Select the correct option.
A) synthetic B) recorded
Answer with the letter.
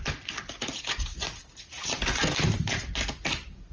B